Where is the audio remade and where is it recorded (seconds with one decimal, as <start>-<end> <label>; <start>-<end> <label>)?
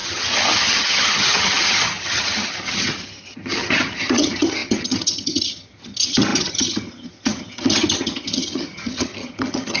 0.0-9.8 remade